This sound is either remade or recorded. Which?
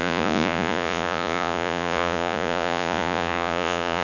remade